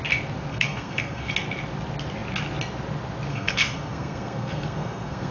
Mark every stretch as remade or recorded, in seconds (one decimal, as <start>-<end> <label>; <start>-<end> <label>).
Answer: 0.0-0.5 recorded; 0.5-1.3 remade; 1.3-3.3 recorded; 3.3-5.3 remade